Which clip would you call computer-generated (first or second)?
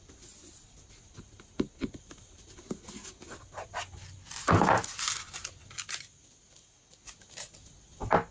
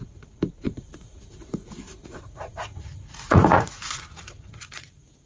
second